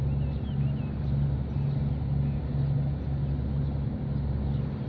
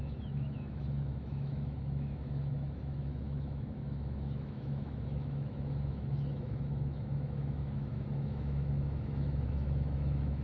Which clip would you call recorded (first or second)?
first